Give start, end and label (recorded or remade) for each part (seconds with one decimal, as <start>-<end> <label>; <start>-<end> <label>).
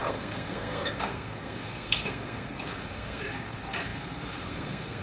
0.0-5.0 remade